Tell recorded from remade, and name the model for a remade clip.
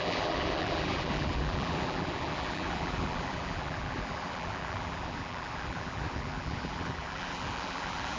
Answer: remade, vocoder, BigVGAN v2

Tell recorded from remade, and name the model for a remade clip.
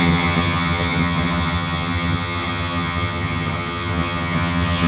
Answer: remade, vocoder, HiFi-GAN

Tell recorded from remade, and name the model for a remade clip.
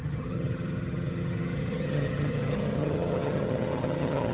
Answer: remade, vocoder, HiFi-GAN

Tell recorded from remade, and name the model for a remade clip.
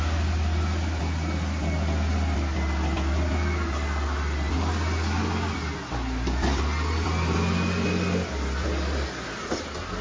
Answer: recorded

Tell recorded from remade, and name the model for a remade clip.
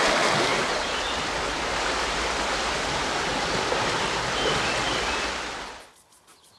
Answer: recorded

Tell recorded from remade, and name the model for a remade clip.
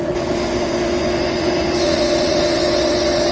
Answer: remade, vocoder, Vocos